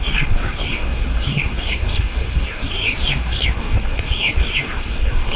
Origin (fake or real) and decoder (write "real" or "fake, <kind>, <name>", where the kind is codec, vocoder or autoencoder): fake, codec, SNAC